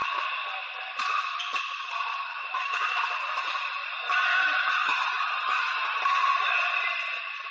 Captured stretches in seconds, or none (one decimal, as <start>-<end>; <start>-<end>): 0.0-2.1; 3.1-4.3; 6.0-7.5